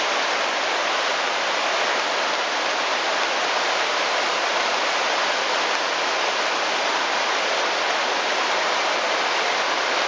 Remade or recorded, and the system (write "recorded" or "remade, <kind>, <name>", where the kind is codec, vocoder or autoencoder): recorded